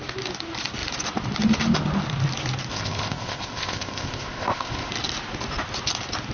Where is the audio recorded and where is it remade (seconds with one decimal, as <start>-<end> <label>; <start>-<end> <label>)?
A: 0.0-2.7 recorded; 2.7-4.9 remade; 4.9-6.3 recorded